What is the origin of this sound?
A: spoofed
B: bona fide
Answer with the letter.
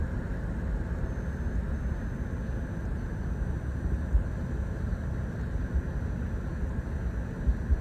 B